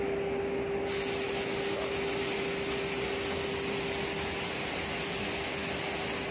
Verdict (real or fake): real